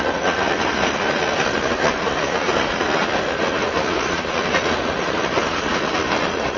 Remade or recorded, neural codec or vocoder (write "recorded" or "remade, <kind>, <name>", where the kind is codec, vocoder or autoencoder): remade, vocoder, Vocos